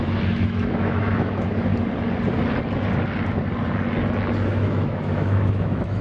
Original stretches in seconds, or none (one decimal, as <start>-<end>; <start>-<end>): 1.7-4.5